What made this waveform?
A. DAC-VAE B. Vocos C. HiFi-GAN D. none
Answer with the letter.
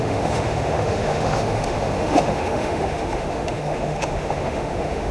A